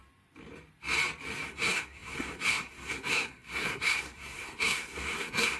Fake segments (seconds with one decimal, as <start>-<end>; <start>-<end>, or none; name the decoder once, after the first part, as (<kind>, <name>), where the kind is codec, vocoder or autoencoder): 1.5-5.6 (codec, SNAC)